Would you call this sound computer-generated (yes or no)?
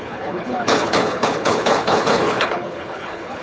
yes